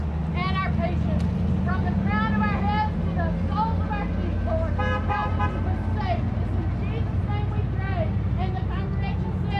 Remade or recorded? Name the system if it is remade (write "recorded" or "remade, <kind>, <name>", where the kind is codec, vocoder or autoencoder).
recorded